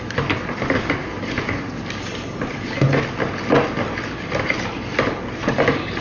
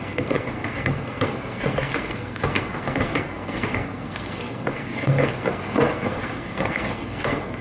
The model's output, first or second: second